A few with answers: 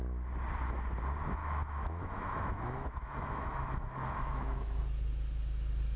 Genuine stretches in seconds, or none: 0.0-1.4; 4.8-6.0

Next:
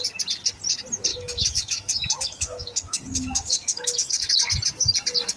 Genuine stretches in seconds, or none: 0.0-1.1; 4.3-5.4